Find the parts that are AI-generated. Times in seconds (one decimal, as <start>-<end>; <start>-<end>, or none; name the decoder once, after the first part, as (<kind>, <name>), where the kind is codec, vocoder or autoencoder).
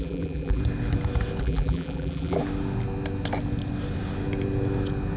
0.0-0.6 (vocoder, BigVGAN v2); 1.4-2.4